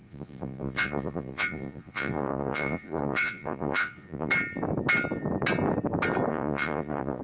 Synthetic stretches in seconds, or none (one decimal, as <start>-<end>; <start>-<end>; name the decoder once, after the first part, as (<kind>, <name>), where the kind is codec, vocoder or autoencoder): 0.0-4.3 (vocoder, Vocos); 6.3-7.2

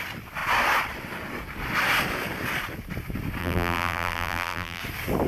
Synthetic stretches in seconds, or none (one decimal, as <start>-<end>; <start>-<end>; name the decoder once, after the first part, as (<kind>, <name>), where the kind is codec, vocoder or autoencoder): 3.4-4.8 (vocoder, BigVGAN v2)

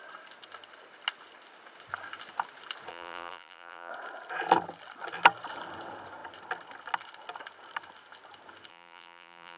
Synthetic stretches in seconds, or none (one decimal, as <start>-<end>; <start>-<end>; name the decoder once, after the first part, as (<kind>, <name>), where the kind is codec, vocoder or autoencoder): 2.9-3.9 (vocoder, BigVGAN v2); 8.7-9.6

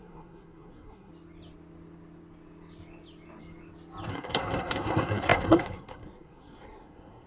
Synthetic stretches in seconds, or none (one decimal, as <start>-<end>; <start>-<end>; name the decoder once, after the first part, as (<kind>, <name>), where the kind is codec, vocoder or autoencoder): 0.0-1.1 (codec, SNAC); 4.1-7.3

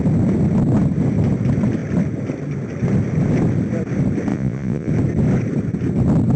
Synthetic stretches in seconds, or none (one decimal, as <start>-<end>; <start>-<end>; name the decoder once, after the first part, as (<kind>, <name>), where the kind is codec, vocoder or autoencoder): 4.3-4.9 (vocoder, Vocos)

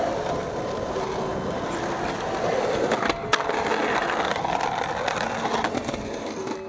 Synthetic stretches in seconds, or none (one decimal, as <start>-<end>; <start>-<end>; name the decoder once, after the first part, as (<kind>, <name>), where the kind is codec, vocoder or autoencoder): none